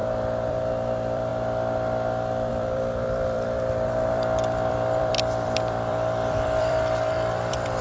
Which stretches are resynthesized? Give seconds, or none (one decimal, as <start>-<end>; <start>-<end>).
0.5-1.3; 2.5-7.8